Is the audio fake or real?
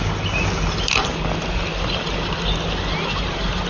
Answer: real